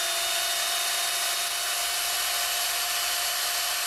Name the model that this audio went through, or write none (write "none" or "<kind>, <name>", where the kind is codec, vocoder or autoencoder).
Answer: none